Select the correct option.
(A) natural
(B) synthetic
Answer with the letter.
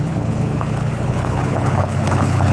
B